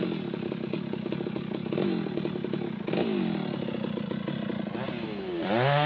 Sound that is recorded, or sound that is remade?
recorded